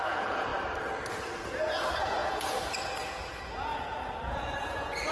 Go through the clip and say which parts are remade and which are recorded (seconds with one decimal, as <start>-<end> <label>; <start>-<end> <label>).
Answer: 0.0-0.5 remade; 0.5-1.6 recorded; 1.6-5.1 remade